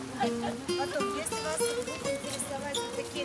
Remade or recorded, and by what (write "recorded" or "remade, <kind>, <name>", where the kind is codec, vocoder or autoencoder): recorded